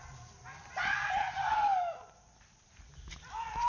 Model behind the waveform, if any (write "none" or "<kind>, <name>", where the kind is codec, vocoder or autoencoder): none